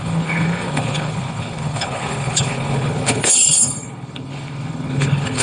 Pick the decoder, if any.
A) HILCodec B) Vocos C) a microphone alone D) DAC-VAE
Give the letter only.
A